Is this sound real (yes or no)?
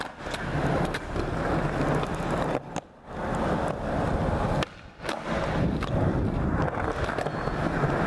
yes